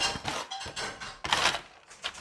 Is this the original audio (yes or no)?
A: yes